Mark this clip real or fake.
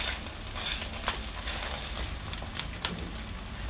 real